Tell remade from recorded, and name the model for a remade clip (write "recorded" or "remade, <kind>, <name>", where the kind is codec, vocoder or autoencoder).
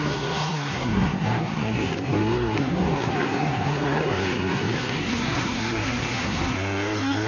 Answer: remade, codec, SNAC